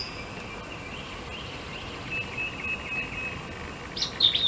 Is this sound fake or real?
real